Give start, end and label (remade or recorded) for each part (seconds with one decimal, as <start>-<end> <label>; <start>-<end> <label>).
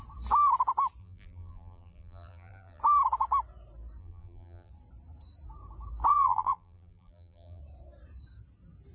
0.0-1.0 recorded; 1.0-2.8 remade; 2.8-4.0 recorded; 4.0-4.7 remade; 4.7-6.1 recorded; 6.1-7.6 remade; 7.6-8.9 recorded